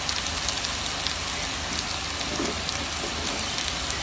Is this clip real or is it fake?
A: real